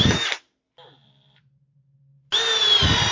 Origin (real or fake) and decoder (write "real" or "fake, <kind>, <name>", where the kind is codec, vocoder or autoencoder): real